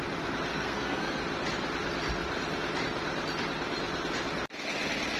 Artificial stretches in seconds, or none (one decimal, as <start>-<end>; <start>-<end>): 0.5-1.2